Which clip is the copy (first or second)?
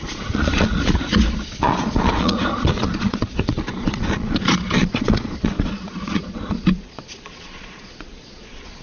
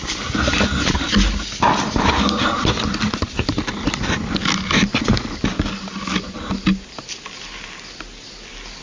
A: first